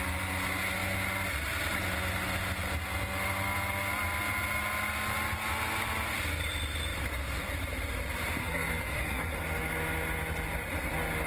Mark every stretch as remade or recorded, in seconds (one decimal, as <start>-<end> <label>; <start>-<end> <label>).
0.0-8.4 recorded; 8.4-9.4 remade; 9.4-11.3 recorded